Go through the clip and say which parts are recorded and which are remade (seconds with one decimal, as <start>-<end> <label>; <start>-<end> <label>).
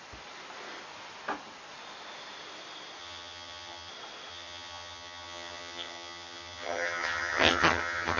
0.0-3.0 recorded; 3.0-3.9 remade; 3.9-4.3 recorded; 4.3-8.2 remade